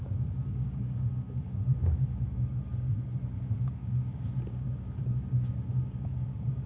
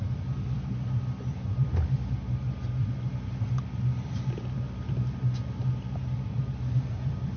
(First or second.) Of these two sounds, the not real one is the first